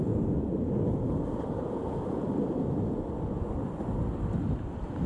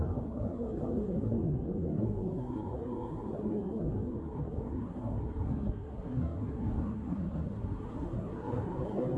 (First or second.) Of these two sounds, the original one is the first